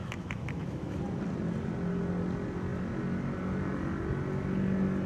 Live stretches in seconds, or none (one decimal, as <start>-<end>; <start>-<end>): 1.0-5.1